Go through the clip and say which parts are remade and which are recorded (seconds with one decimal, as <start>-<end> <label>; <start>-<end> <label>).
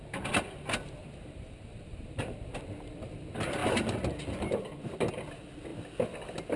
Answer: 0.0-1.0 recorded; 1.0-2.7 remade; 2.7-6.6 recorded